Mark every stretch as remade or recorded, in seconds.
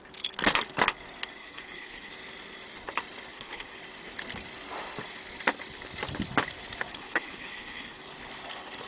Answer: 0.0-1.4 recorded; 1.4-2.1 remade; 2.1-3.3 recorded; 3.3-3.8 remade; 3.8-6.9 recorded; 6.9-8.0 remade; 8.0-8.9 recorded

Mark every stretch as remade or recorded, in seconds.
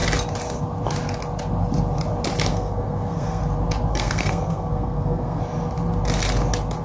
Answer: 0.0-2.5 recorded; 2.5-3.4 remade; 3.4-3.9 recorded; 3.9-5.4 remade; 5.4-6.8 recorded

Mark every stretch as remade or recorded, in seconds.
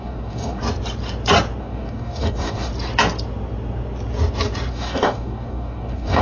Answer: 0.0-0.6 remade; 0.6-1.6 recorded; 1.6-2.7 remade; 2.7-4.7 recorded; 4.7-6.2 remade